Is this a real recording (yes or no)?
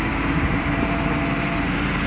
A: no